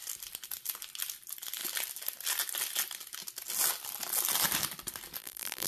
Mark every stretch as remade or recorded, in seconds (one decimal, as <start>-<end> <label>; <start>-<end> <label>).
0.0-5.2 recorded; 5.2-5.7 remade